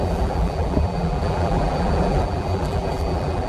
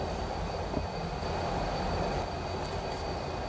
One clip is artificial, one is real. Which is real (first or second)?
second